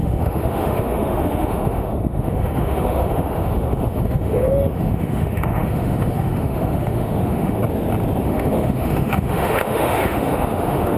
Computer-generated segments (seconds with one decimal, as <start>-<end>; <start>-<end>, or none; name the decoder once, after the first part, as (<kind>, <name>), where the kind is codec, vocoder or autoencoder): 0.0-7.6 (autoencoder, DAC-VAE); 8.2-11.0